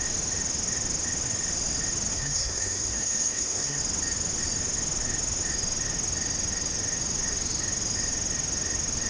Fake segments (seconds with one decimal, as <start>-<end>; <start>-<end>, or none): 2.1-3.8